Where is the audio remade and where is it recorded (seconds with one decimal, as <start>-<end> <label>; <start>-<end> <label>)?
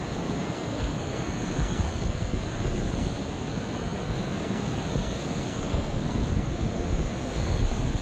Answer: 0.0-8.0 remade